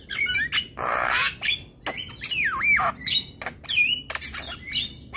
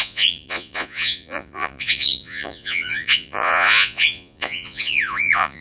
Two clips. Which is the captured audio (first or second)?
first